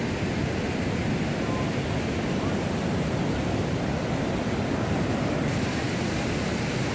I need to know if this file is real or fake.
real